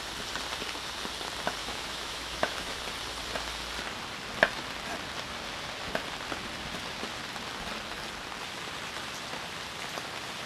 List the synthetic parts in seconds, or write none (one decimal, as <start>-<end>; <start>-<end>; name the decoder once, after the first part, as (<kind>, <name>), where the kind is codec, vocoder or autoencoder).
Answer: 1.6-2.8 (autoencoder, DAC-VAE)